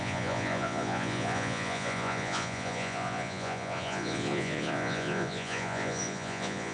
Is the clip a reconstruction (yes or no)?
yes